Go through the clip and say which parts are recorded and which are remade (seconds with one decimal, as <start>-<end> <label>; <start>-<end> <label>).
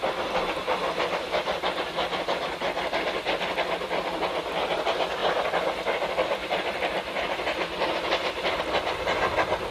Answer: 0.0-5.2 recorded; 5.2-8.6 remade; 8.6-9.7 recorded